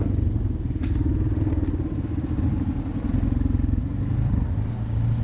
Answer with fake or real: real